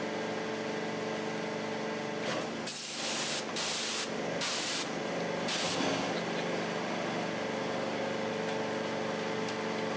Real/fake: real